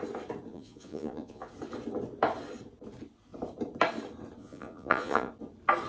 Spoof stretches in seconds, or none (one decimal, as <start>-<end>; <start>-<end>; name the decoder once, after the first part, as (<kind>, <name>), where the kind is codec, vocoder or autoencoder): 0.5-1.5 (vocoder, Vocos); 4.4-5.3